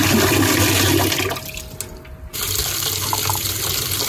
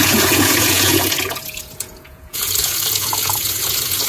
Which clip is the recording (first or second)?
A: first